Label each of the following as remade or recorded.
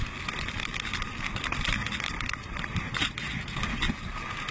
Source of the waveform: recorded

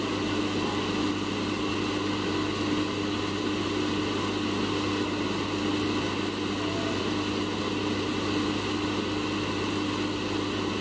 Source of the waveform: recorded